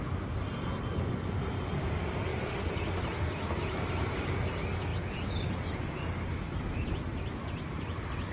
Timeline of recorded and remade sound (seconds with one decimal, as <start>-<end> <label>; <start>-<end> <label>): 0.0-8.3 recorded